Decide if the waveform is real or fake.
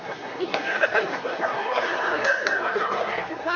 fake